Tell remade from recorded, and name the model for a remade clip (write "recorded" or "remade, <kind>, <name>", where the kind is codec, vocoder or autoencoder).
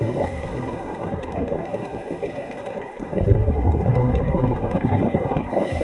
remade, codec, SNAC